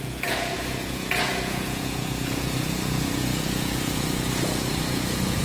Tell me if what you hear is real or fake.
fake